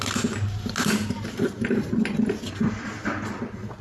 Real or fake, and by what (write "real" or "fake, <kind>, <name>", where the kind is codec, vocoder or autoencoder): real